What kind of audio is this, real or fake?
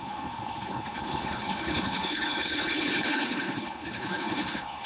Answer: fake